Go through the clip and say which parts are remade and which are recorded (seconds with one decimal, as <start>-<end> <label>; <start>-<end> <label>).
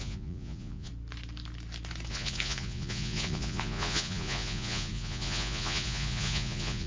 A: 0.0-0.9 remade; 0.9-2.1 recorded; 2.1-6.9 remade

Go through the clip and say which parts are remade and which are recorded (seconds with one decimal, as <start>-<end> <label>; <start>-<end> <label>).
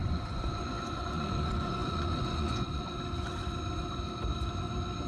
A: 0.0-3.0 remade; 3.0-5.1 recorded